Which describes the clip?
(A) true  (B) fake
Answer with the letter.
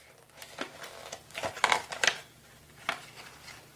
A